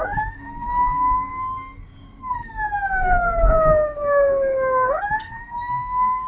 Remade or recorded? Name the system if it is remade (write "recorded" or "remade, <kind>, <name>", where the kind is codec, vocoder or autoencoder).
remade, codec, SNAC